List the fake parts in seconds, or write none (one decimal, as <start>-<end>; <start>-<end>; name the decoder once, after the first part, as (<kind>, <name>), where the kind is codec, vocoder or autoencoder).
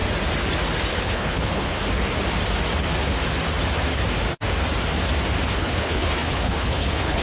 0.9-1.8 (codec, HILCodec); 5.5-7.2